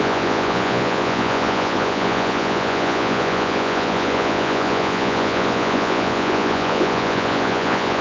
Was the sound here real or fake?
fake